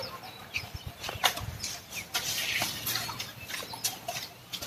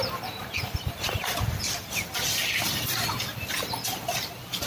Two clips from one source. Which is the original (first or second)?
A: first